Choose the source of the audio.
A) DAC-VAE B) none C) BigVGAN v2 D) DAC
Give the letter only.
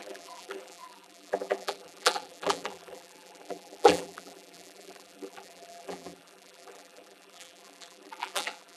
C